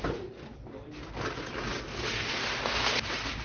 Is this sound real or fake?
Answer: real